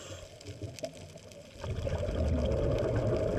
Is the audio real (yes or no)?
yes